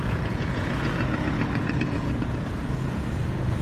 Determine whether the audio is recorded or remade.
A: remade